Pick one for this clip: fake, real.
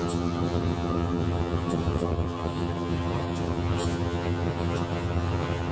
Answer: fake